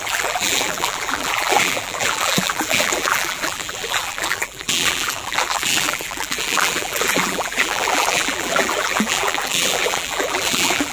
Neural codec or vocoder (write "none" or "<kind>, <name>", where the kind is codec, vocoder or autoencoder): vocoder, BigVGAN v2